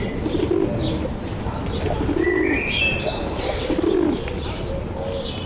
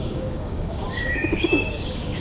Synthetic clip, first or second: second